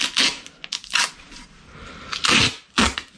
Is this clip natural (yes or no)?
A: yes